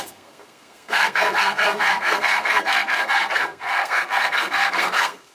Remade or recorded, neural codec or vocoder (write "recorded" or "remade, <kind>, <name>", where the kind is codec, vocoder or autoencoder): remade, codec, SNAC